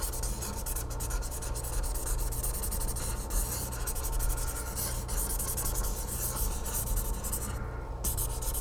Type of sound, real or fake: real